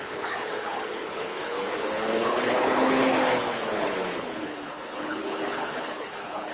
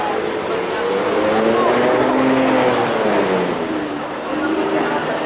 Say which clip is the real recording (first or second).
second